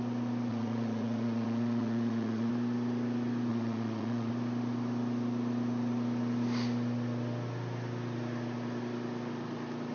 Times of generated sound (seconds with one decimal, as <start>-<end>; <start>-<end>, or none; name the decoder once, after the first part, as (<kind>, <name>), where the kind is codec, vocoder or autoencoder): 0.5-2.5 (vocoder, Vocos); 3.5-4.3